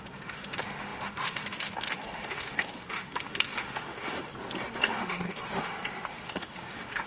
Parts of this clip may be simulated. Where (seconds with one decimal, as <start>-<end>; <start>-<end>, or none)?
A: 0.0-4.3; 4.8-5.4; 6.1-7.1